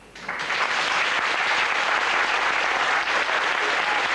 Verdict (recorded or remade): recorded